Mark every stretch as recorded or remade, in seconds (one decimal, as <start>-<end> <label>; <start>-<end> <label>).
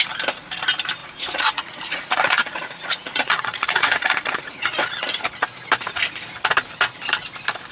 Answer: 0.0-1.0 recorded; 1.0-5.2 remade; 5.2-7.7 recorded